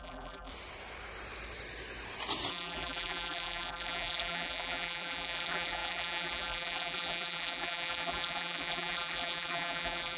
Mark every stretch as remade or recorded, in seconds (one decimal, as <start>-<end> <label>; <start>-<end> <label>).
0.0-0.5 remade; 0.5-2.5 recorded; 2.5-10.2 remade